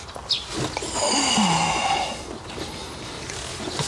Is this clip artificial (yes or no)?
no